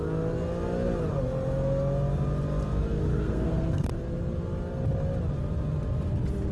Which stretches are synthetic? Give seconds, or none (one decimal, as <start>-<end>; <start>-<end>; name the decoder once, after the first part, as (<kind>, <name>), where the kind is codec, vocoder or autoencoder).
3.1-3.9 (codec, SNAC)